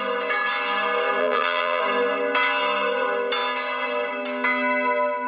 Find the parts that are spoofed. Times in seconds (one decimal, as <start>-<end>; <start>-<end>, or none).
1.2-1.8